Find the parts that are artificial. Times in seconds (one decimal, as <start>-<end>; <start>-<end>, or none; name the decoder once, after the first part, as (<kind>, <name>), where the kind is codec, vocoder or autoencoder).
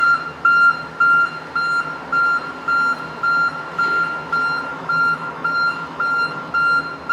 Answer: 4.7-6.5 (autoencoder, DAC-VAE)